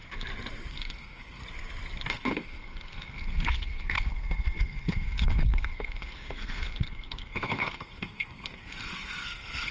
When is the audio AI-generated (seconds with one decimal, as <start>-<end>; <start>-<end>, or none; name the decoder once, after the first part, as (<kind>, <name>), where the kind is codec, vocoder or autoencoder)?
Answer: 0.7-1.4 (codec, SNAC); 2.1-9.7